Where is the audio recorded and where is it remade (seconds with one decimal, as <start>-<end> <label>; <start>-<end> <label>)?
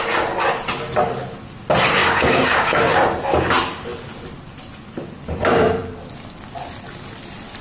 0.0-2.0 recorded; 2.0-2.8 remade; 2.8-7.6 recorded